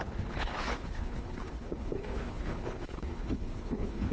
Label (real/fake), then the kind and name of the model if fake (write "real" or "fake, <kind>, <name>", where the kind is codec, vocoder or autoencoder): fake, codec, HILCodec